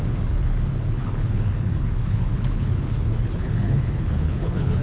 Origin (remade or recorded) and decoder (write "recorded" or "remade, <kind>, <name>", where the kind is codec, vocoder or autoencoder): remade, codec, HILCodec